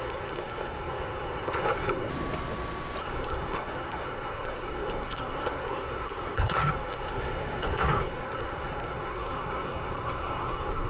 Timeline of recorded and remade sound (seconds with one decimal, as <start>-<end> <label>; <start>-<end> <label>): 0.0-2.1 remade; 2.1-3.0 recorded; 3.0-10.9 remade